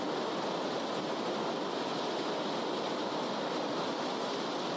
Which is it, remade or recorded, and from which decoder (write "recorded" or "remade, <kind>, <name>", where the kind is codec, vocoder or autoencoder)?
recorded